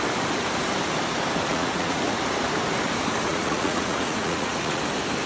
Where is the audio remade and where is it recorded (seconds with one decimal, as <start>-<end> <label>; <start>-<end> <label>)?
0.0-1.5 recorded; 1.5-2.0 remade; 2.0-3.3 recorded; 3.3-4.8 remade; 4.8-5.3 recorded